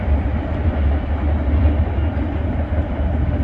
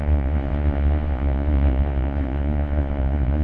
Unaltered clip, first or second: first